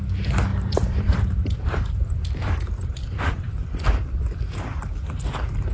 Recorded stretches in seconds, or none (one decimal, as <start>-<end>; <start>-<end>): 0.0-0.5; 3.4-5.7